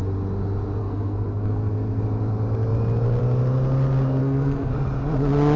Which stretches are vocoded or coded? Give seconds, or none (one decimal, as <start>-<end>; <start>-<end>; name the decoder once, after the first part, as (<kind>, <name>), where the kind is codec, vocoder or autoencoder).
0.8-2.0 (codec, SNAC); 4.2-4.7